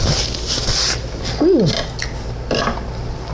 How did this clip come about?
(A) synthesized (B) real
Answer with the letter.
B